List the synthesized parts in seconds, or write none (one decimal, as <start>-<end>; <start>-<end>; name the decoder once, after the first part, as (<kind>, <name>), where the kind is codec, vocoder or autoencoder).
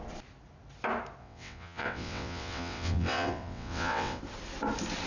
1.2-4.2 (vocoder, WaveNeXt)